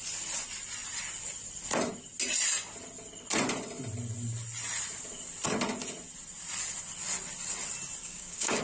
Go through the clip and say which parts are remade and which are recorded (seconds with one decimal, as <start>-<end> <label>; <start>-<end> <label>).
0.0-8.0 recorded; 8.0-8.6 remade